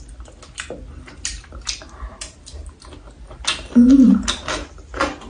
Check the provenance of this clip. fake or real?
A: real